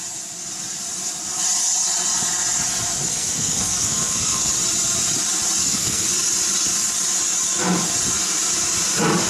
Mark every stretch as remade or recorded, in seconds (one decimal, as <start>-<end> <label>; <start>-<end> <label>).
0.0-3.1 recorded; 3.1-4.5 remade; 4.5-5.6 recorded; 5.6-6.1 remade; 6.1-9.3 recorded